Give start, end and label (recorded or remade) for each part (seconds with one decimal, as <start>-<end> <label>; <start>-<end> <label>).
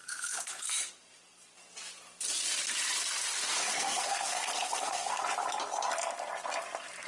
0.0-0.9 remade; 0.9-3.5 recorded; 3.5-5.2 remade; 5.2-7.1 recorded